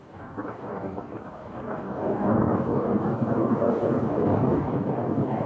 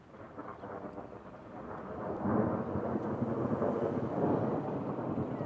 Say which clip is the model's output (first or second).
first